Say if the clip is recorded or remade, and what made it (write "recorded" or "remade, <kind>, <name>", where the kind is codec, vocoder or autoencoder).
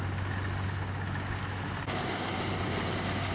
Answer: recorded